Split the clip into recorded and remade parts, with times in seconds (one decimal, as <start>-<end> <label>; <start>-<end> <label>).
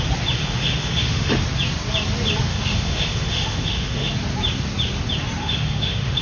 0.0-0.4 recorded; 0.4-1.3 remade; 1.3-2.5 recorded; 2.5-4.1 remade; 4.1-5.4 recorded; 5.4-6.2 remade